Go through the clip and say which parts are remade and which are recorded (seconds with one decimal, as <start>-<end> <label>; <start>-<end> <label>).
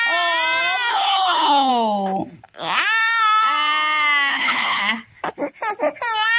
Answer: 0.0-0.9 recorded; 0.9-1.7 remade; 1.7-4.3 recorded; 4.3-4.8 remade; 4.8-6.4 recorded